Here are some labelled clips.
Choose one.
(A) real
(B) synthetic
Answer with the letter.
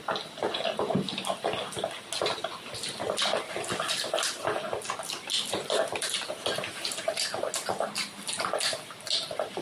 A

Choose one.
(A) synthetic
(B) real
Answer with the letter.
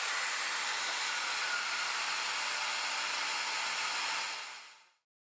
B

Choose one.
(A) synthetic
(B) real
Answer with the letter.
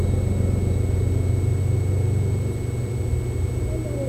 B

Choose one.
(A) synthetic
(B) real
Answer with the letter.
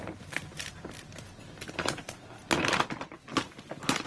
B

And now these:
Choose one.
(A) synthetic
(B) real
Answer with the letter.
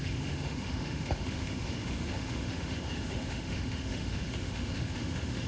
A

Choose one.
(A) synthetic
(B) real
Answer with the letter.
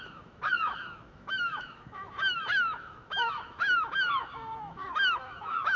A